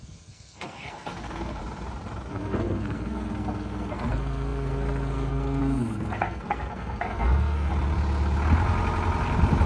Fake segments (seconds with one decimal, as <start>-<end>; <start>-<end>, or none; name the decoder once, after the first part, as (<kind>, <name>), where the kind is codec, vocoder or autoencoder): 0.0-1.6 (codec, SNAC); 2.3-7.7